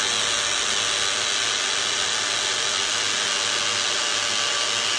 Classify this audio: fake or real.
real